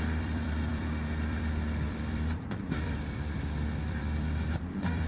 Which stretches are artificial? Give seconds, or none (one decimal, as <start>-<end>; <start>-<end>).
0.0-5.1